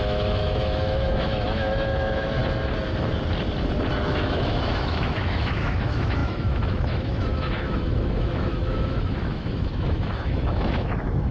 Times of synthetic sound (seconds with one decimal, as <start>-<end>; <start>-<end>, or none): 0.0-2.4; 4.1-11.3